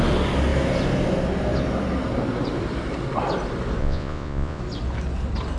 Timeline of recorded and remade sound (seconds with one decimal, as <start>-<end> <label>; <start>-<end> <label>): 0.0-3.8 recorded; 3.8-4.6 remade; 4.6-5.6 recorded